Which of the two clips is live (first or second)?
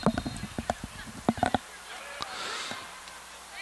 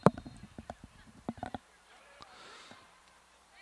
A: first